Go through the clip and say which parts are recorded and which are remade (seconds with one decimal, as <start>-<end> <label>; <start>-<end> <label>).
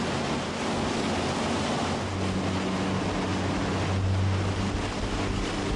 0.0-5.8 recorded